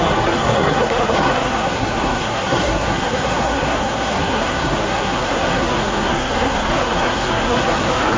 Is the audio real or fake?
fake